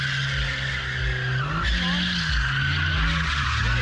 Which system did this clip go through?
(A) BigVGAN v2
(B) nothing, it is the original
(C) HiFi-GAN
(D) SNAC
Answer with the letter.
B